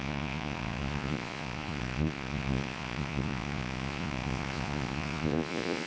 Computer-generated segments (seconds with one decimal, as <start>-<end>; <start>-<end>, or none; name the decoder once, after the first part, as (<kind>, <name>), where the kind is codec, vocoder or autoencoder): 0.0-5.9 (vocoder, Vocos)